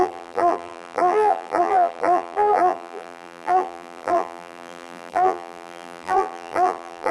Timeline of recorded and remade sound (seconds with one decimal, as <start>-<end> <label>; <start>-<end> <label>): 0.0-7.1 remade